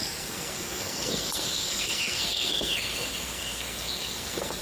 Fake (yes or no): yes